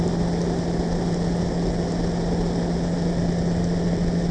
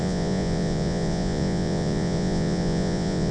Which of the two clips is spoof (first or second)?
second